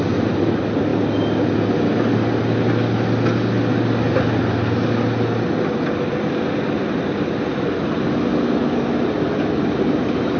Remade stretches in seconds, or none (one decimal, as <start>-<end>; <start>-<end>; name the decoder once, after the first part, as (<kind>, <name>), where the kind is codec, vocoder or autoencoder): none